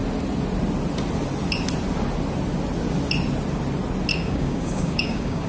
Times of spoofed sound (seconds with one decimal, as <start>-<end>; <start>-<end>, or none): 4.1-5.5